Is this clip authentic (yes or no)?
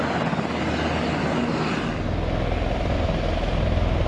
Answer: yes